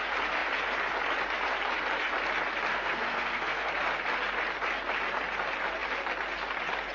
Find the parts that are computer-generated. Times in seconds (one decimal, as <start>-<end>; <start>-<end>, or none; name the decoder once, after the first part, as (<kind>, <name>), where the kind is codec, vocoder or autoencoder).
2.7-3.7 (codec, SNAC)